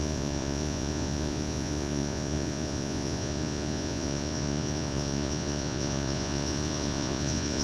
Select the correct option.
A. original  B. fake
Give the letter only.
B